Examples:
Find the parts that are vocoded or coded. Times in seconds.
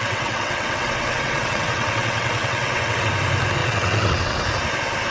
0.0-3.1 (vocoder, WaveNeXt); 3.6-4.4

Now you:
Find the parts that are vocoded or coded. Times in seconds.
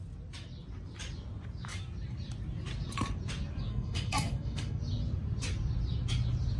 3.7-4.8 (codec, SNAC)